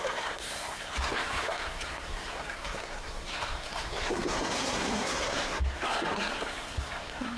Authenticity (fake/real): fake